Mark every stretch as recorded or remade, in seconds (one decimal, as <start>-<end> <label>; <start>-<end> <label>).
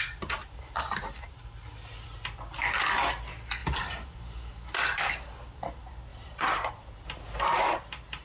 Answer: 0.0-3.6 recorded; 3.6-5.1 remade; 5.1-6.1 recorded; 6.1-6.7 remade; 6.7-8.2 recorded